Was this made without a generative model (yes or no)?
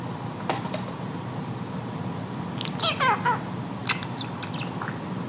yes